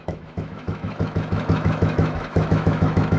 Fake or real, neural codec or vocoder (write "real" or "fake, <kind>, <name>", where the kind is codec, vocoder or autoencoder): fake, autoencoder, DAC-VAE